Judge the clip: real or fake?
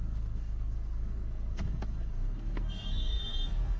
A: fake